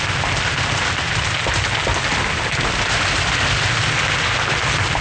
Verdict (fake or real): real